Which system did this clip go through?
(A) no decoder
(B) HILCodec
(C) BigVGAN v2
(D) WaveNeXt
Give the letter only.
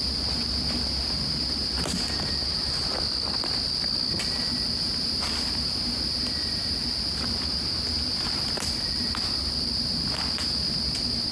A